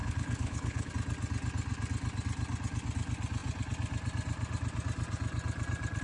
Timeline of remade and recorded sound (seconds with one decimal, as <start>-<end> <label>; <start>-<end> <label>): 0.0-0.9 remade; 0.9-6.0 recorded